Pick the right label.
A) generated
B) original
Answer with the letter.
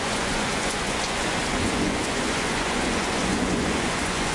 A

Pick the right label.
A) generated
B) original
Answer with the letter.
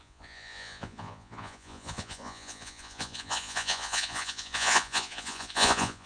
A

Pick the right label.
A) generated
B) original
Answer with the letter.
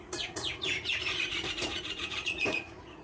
A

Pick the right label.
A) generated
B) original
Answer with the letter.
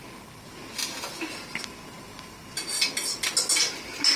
B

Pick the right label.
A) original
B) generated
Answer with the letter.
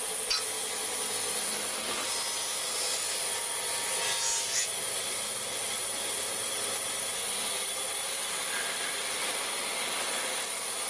A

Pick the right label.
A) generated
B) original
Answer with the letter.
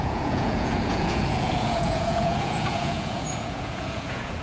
A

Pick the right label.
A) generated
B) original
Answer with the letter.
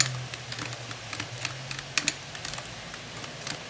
B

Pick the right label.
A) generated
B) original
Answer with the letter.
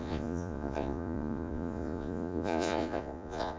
A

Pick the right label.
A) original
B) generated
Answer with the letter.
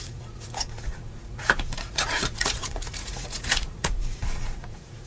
B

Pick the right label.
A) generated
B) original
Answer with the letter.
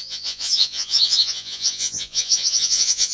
A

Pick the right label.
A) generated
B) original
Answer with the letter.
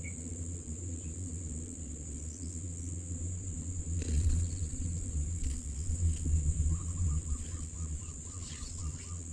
A